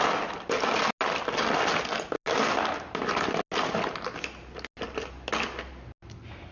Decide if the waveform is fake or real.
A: real